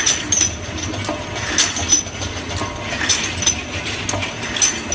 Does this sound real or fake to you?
real